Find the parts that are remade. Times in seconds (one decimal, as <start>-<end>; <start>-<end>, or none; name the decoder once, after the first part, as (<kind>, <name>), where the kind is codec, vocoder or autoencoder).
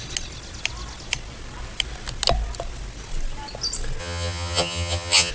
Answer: 4.0-5.3 (vocoder, HiFi-GAN)